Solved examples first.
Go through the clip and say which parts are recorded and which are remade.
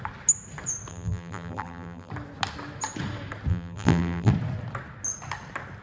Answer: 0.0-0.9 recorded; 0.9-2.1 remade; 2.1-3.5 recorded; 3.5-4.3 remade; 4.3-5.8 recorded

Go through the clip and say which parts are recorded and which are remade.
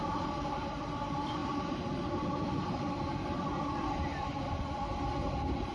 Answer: 0.0-5.7 recorded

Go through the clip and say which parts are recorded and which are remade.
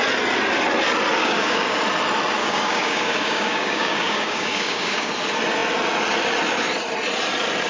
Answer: 0.0-1.2 recorded; 1.2-1.8 remade; 1.8-2.4 recorded; 2.4-5.1 remade; 5.1-7.7 recorded